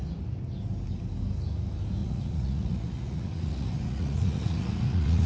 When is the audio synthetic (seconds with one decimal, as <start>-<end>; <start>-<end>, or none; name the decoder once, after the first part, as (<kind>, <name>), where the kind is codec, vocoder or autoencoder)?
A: 2.0-5.3 (vocoder, Vocos)